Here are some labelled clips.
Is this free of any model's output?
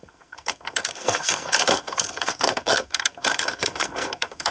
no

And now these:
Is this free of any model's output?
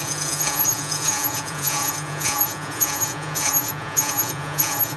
no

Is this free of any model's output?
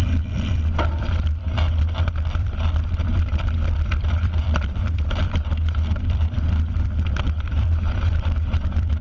no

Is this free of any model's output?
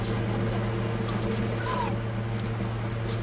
yes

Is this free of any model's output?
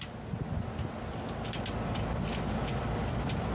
yes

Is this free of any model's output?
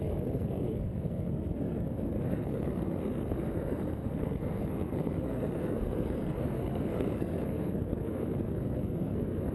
no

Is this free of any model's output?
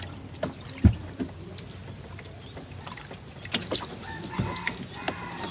yes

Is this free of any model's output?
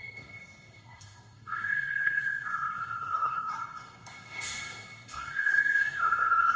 no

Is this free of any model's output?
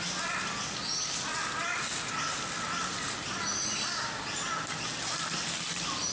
yes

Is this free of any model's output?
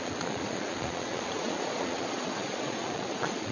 no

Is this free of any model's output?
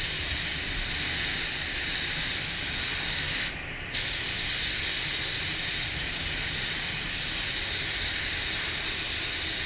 yes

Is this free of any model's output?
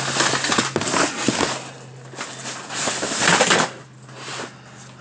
yes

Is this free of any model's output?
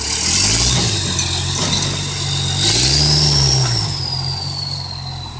yes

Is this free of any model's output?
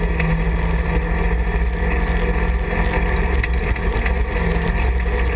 yes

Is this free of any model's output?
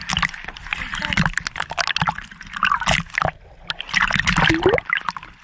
yes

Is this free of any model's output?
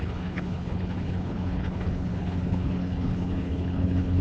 no